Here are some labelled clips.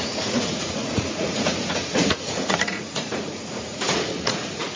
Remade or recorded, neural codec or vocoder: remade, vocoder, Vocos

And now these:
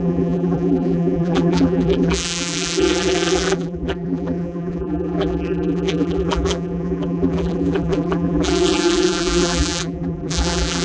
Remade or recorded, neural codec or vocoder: remade, vocoder, BigVGAN v2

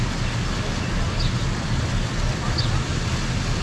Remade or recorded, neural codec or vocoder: recorded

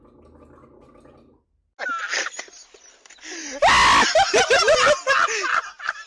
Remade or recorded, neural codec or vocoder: recorded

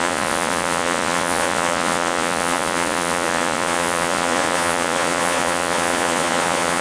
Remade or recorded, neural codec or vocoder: remade, vocoder, Vocos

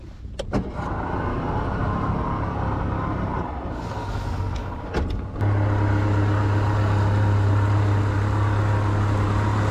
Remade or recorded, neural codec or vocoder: recorded